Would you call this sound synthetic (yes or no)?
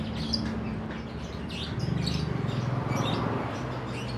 no